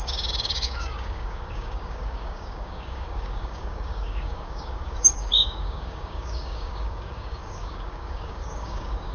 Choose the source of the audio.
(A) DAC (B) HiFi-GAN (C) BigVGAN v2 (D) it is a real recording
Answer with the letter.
A